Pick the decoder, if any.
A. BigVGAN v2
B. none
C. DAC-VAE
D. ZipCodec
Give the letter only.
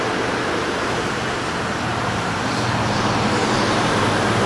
A